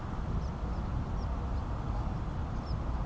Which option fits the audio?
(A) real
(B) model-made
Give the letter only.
A